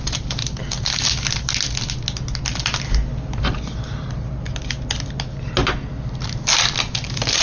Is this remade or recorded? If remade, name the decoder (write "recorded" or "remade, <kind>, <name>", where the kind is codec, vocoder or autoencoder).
recorded